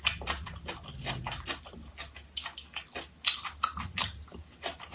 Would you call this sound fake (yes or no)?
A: no